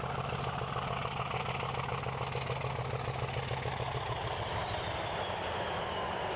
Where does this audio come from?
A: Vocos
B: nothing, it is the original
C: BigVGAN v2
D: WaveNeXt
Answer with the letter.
B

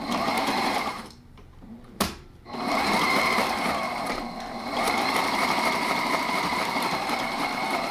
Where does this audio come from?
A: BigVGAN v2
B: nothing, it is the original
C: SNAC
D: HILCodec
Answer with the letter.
A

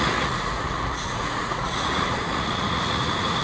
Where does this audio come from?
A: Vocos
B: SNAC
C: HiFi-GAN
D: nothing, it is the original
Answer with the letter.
A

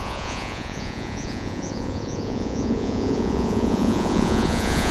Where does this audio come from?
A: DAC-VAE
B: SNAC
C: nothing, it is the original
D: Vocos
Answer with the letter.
D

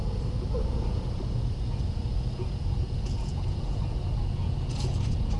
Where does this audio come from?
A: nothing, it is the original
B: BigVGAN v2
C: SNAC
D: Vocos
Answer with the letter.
D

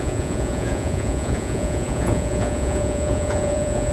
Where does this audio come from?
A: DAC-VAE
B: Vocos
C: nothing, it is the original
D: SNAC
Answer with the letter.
B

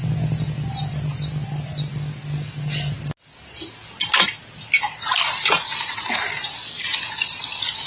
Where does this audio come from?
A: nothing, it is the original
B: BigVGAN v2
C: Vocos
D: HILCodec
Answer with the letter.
A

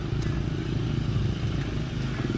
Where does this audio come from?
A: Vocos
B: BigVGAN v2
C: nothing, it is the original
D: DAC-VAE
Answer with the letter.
C